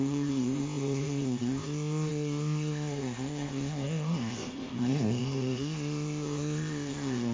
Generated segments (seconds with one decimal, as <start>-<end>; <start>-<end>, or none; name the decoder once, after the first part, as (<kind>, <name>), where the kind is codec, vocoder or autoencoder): 0.0-7.3 (codec, ZipCodec)